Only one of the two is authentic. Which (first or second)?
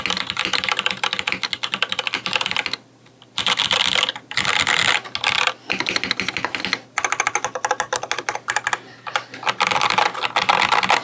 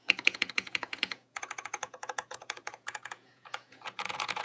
first